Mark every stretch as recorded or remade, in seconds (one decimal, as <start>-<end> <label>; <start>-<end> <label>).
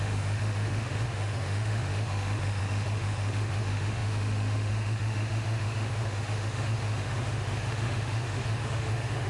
0.0-9.3 remade